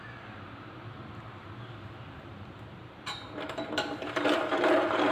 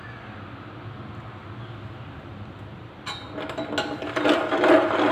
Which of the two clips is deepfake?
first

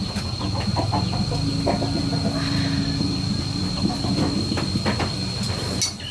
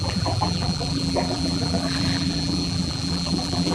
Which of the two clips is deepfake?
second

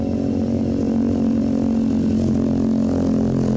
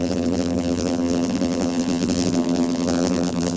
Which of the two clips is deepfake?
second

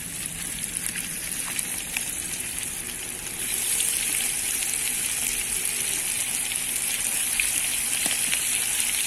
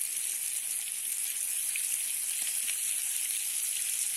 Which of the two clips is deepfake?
first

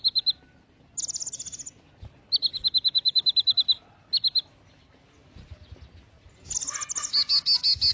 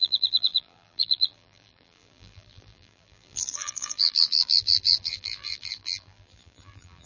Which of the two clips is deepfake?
second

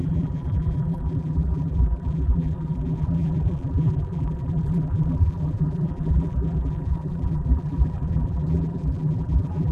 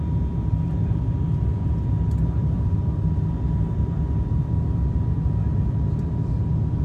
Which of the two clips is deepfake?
first